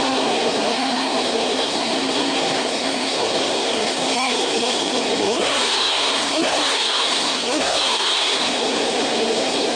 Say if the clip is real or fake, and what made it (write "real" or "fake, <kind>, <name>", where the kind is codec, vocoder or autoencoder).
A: fake, codec, SNAC